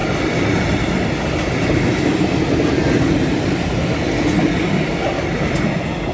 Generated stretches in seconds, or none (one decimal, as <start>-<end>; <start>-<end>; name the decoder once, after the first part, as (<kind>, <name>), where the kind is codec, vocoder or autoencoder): none